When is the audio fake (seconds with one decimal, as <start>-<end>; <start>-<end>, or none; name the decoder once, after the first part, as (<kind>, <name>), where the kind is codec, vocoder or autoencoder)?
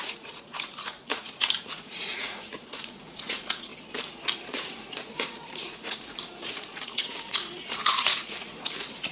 0.0-3.7 (vocoder, Vocos); 4.3-9.1